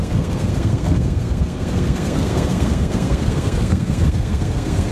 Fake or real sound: fake